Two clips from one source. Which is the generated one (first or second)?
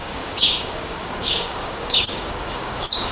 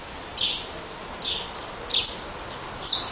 first